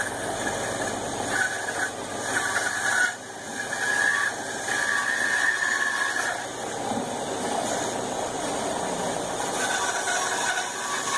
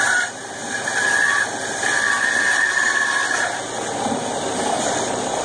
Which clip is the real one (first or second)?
first